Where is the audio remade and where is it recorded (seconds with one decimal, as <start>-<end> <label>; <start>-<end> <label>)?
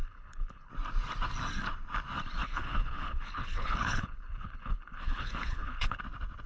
0.0-0.7 remade; 0.7-2.4 recorded; 2.4-6.0 remade; 6.0-6.5 recorded